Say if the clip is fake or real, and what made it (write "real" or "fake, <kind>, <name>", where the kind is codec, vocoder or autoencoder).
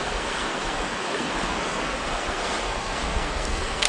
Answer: fake, codec, SNAC